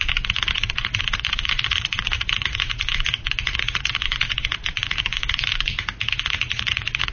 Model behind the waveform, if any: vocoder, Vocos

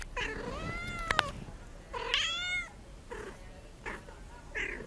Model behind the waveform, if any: none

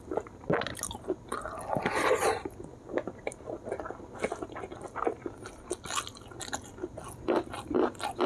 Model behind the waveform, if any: none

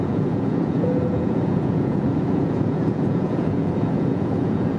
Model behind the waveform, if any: vocoder, Vocos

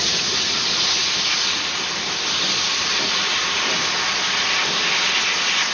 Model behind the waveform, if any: none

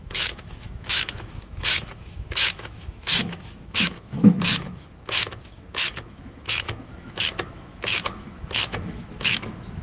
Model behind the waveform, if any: autoencoder, DAC-VAE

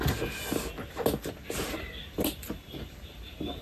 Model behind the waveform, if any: none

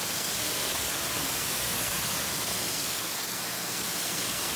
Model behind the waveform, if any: codec, SNAC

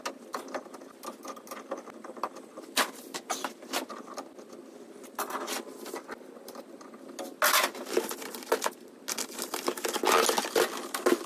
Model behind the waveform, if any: none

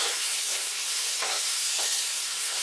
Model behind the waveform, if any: codec, SNAC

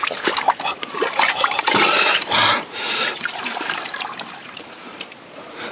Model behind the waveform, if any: vocoder, BigVGAN v2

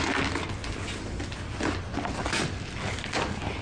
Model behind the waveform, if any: none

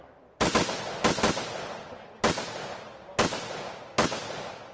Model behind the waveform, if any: none